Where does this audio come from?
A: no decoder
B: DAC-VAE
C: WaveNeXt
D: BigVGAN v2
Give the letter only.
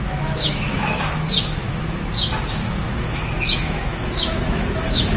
B